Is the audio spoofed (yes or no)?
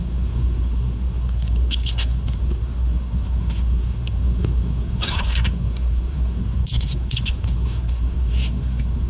yes